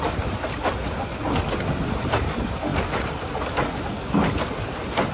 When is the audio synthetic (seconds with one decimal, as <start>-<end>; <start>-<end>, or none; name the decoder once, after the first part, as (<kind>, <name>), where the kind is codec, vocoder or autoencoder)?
none